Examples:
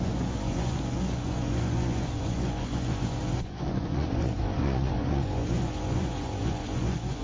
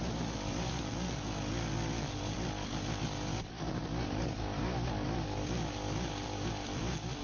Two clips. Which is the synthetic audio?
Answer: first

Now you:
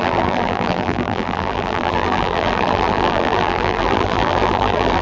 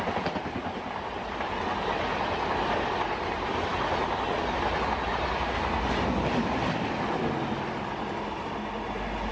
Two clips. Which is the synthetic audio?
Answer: first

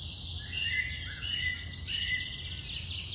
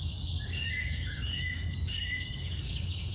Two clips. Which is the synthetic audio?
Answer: second